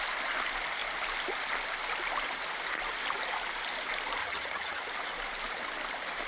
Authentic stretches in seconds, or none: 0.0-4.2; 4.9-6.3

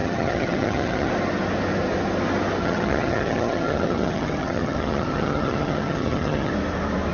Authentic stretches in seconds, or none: 1.1-2.6; 6.5-7.1